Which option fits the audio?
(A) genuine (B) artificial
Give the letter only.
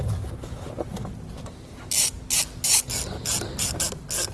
A